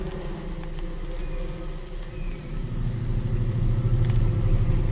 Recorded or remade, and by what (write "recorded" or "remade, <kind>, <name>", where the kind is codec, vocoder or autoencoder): recorded